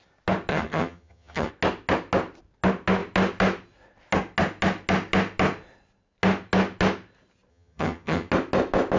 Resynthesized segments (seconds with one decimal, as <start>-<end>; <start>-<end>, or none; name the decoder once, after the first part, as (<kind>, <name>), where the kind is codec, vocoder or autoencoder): 0.5-1.5 (vocoder, HiFi-GAN); 7.5-8.3